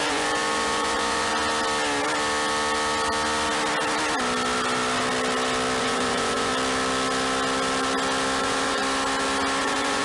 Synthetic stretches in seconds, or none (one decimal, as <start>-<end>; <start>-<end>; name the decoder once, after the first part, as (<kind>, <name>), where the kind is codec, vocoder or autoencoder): 0.0-1.3 (vocoder, Vocos); 5.8-6.5; 8.4-8.8; 9.6-10.0